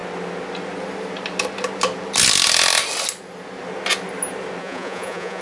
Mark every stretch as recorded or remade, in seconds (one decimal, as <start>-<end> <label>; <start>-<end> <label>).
0.0-4.6 recorded; 4.6-5.4 remade